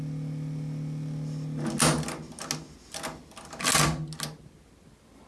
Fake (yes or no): no